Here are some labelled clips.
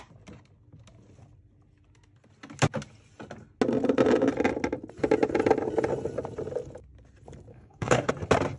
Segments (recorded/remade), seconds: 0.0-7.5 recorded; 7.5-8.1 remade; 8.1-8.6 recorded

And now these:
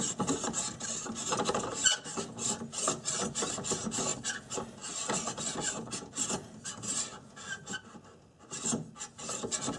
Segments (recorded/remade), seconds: 0.0-9.8 recorded